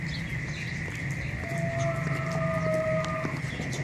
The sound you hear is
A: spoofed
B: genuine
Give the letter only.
B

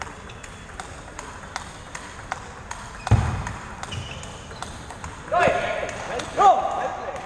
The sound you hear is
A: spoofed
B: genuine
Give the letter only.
B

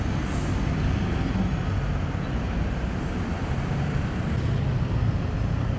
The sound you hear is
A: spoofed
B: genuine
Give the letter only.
B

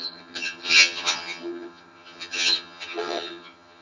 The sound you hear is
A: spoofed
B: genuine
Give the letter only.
A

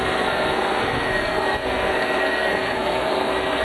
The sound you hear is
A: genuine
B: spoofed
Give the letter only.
B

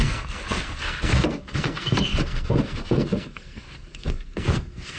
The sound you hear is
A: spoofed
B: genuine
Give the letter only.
A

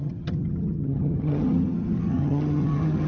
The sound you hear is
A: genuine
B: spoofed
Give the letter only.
B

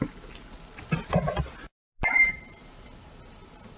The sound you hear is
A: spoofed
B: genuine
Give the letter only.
B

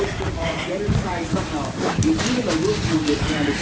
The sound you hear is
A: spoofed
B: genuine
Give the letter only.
B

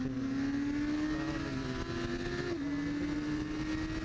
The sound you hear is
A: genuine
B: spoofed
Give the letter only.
A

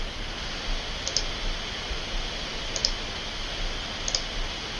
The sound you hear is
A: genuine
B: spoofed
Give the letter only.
A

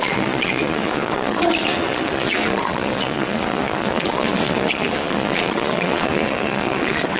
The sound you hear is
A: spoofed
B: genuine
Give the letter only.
A